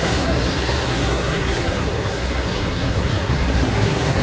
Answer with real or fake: fake